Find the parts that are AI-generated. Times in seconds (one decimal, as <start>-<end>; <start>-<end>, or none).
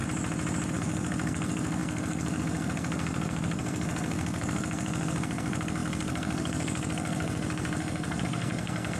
0.7-9.0